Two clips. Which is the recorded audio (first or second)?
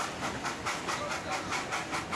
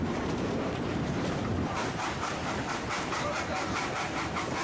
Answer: first